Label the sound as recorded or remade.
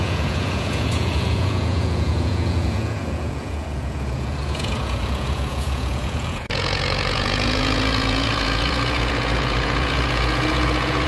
remade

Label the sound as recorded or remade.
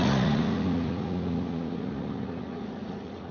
remade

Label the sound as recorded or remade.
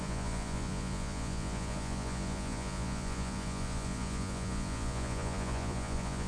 remade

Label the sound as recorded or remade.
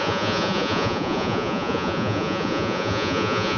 remade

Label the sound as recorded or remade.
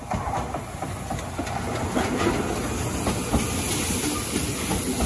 recorded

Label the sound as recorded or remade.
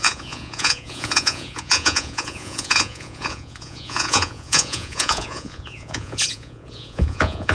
remade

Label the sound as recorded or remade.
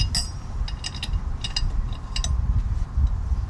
recorded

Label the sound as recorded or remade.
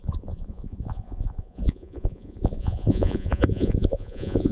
remade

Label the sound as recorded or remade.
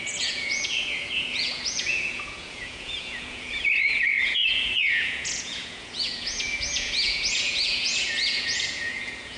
remade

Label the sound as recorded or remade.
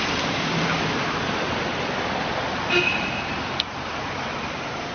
recorded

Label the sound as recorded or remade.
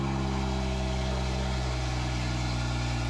recorded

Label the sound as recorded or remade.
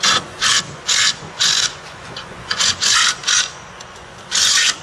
remade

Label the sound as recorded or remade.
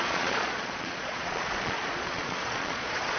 remade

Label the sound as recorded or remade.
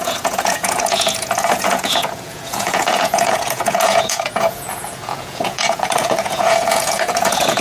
remade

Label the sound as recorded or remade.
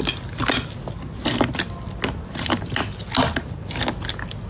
recorded